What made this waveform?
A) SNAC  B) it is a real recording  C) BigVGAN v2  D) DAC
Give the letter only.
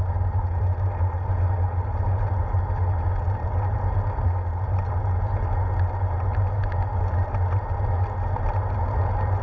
B